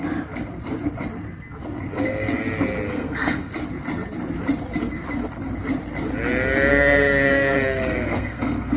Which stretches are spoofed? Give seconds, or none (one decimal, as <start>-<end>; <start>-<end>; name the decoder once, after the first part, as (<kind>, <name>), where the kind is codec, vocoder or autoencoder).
2.9-3.5 (codec, SNAC); 6.7-8.8